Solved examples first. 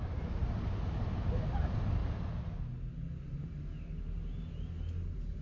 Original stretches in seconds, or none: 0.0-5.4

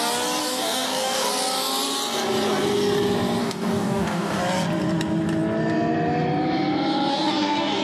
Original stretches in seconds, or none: 0.0-0.4; 1.3-3.4; 4.4-7.1

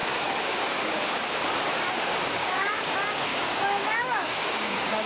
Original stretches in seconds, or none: 1.2-1.7; 2.9-3.3

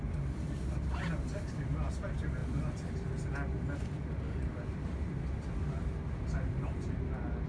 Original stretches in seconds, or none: 0.0-7.5

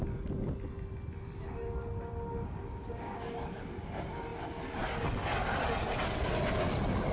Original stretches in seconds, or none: 0.0-2.4; 3.6-7.1